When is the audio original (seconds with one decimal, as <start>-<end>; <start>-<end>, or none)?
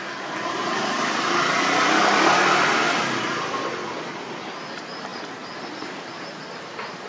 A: 0.0-7.1